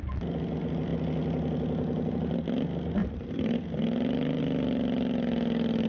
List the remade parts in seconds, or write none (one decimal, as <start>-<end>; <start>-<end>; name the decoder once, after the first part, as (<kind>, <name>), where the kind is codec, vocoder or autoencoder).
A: 3.0-4.4 (vocoder, BigVGAN v2)